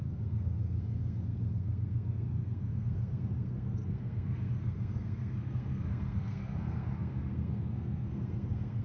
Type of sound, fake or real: fake